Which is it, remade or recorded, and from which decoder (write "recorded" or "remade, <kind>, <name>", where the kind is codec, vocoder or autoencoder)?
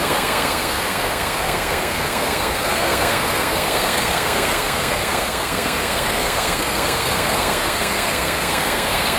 remade, codec, SNAC